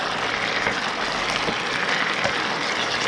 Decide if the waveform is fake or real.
real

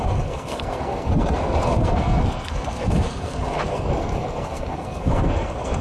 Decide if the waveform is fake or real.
fake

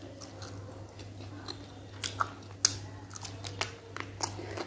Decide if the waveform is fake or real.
real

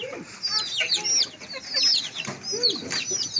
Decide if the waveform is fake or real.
real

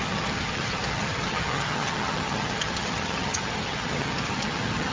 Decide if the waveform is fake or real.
fake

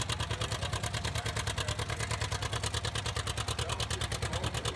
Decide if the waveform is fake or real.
real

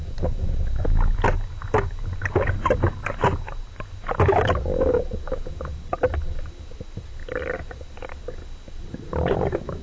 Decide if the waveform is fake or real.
real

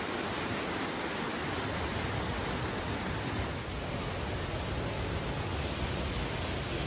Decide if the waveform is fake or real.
real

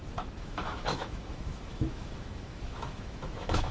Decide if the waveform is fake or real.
fake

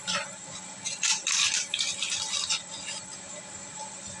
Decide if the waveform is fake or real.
real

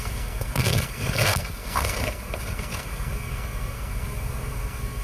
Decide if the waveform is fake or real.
fake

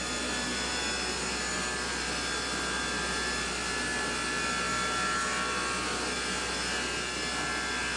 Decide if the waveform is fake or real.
real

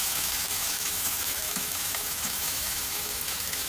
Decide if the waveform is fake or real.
fake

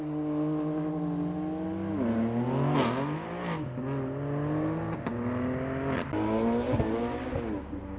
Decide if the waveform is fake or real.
real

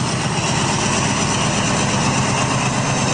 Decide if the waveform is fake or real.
real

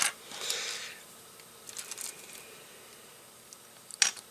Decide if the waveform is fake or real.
real